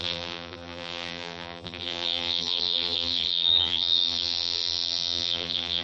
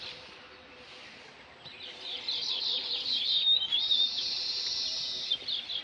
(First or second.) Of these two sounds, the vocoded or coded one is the first